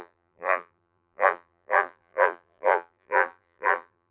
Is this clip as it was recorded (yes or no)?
no